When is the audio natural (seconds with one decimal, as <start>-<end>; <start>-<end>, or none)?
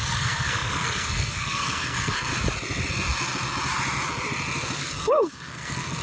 2.3-4.8